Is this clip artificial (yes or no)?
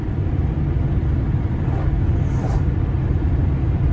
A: no